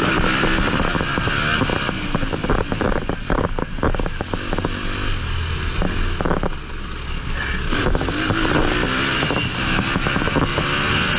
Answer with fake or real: real